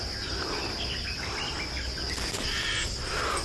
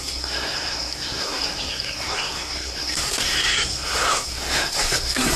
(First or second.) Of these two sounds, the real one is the first